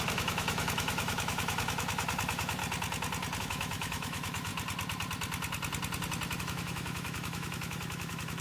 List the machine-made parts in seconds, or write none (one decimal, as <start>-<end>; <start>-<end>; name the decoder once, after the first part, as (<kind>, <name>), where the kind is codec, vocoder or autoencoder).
0.0-2.6 (autoencoder, DAC-VAE); 3.4-4.5; 6.4-8.4